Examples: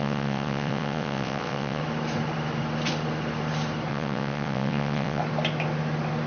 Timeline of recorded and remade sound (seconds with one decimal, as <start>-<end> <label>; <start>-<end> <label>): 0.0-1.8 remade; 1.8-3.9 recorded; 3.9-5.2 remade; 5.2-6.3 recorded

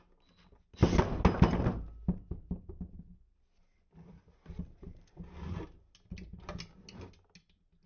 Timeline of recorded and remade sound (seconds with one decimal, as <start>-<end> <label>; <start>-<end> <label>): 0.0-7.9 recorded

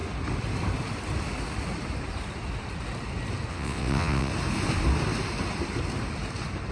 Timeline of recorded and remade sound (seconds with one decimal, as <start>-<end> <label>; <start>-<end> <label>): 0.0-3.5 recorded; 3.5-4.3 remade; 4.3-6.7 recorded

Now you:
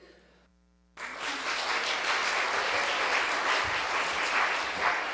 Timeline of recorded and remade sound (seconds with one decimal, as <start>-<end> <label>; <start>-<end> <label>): 0.0-5.1 recorded

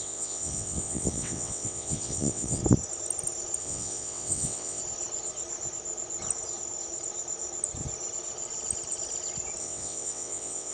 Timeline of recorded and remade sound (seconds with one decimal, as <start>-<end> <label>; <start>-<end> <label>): 0.0-2.6 remade; 2.6-3.6 recorded; 3.6-4.8 remade; 4.8-9.6 recorded; 9.6-10.7 remade

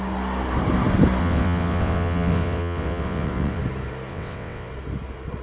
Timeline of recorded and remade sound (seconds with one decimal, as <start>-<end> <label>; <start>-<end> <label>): 0.0-1.2 recorded; 1.2-3.6 remade; 3.6-4.1 recorded; 4.1-4.7 remade; 4.7-5.4 recorded